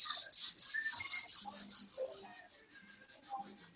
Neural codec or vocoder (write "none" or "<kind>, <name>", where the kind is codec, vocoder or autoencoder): none